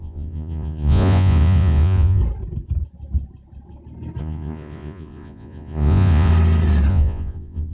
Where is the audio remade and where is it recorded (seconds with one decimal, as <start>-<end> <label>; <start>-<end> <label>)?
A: 0.0-2.2 remade; 2.2-4.2 recorded; 4.2-6.3 remade; 6.3-6.9 recorded; 6.9-7.7 remade